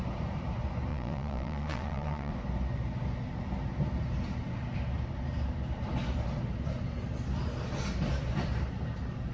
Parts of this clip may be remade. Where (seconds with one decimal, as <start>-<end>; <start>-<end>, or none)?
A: 0.9-2.3

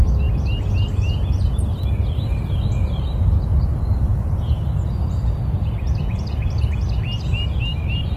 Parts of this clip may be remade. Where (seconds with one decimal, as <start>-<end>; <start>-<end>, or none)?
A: none

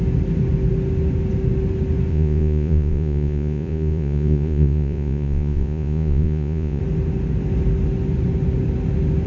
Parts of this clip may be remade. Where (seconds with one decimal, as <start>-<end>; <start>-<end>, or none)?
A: 2.1-6.8

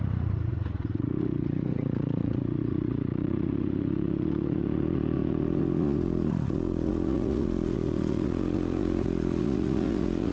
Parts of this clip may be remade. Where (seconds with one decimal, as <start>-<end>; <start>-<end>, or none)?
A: 0.0-10.3